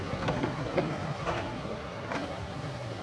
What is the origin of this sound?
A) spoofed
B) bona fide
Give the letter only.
A